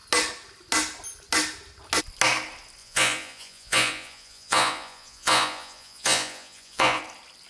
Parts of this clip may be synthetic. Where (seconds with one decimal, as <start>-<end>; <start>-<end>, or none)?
2.8-7.0